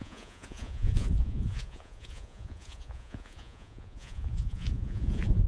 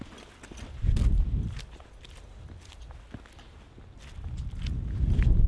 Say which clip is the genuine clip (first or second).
second